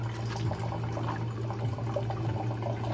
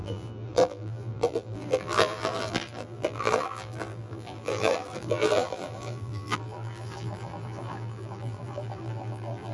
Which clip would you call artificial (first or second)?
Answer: second